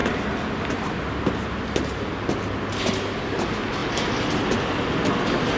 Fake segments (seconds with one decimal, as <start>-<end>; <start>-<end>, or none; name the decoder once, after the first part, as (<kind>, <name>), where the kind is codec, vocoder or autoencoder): none